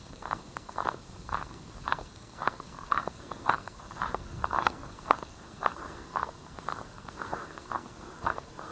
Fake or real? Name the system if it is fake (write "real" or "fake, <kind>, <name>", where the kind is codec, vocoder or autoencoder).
fake, codec, SNAC